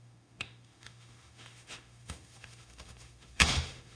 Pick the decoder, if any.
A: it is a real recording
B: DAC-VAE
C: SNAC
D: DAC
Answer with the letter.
B